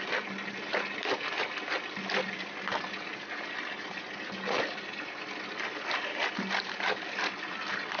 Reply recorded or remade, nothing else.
recorded